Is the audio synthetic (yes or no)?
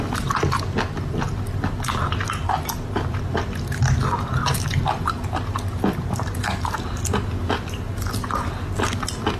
no